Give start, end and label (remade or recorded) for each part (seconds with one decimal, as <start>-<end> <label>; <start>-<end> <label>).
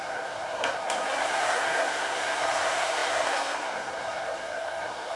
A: 0.0-5.2 remade